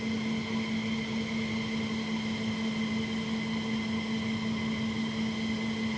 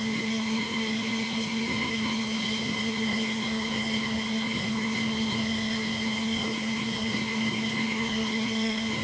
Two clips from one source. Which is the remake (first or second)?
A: second